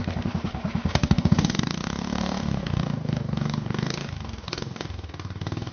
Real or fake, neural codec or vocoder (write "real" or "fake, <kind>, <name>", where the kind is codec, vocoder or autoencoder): fake, codec, DAC